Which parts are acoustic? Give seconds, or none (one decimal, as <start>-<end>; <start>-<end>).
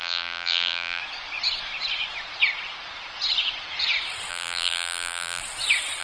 1.0-4.3; 5.4-6.0